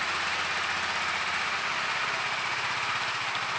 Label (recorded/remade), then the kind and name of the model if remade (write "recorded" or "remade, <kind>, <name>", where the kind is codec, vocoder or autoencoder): recorded